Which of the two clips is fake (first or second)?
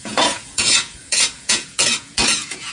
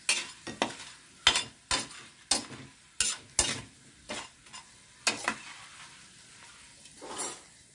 first